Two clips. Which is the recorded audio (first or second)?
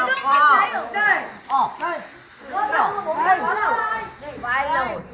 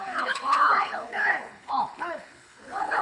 first